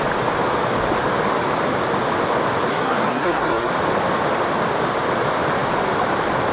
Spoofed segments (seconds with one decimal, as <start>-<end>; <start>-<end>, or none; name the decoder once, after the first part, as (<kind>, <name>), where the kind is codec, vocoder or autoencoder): 2.7-3.7 (codec, SNAC)